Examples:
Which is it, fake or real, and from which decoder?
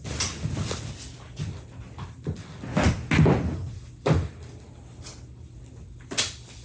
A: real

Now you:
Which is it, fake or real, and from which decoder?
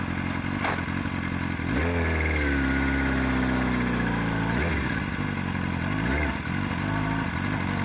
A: real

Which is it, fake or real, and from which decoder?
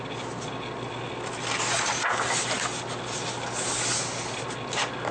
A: real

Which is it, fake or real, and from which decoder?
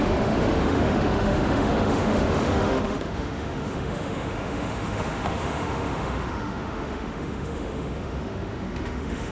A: fake, autoencoder, DAC-VAE